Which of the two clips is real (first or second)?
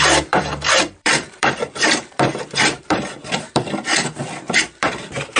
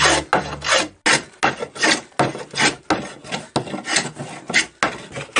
second